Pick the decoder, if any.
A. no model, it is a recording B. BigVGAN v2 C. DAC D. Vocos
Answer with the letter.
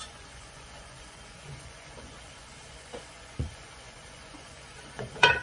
D